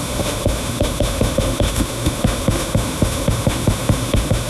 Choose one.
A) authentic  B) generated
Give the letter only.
B